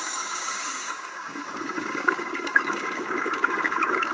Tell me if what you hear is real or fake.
fake